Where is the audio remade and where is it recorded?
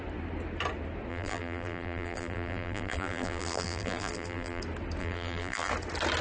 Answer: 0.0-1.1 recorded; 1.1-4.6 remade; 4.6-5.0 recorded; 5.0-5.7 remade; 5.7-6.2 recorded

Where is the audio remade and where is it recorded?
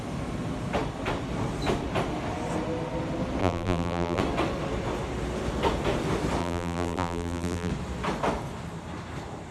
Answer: 0.0-3.4 recorded; 3.4-4.2 remade; 4.2-6.4 recorded; 6.4-7.7 remade; 7.7-9.5 recorded